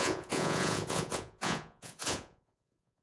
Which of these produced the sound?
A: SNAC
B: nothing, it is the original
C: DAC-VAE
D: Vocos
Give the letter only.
D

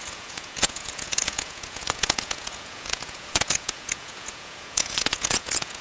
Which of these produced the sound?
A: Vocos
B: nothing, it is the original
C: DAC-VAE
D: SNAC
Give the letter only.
A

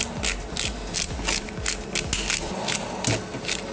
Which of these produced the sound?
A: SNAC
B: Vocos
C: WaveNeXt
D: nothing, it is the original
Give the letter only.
D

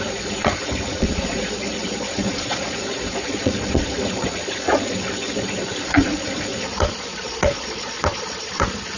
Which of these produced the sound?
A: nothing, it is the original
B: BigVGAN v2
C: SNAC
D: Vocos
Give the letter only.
D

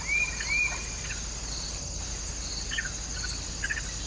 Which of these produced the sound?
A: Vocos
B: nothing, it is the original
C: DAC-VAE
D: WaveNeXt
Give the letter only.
B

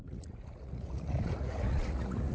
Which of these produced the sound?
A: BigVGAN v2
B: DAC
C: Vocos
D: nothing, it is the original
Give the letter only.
C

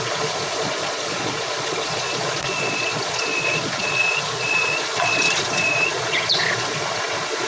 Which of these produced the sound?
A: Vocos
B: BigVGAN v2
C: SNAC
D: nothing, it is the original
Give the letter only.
A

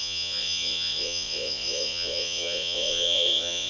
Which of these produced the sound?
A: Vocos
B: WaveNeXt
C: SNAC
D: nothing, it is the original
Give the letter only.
A